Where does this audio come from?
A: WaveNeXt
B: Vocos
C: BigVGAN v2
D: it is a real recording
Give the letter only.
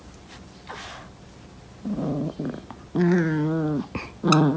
D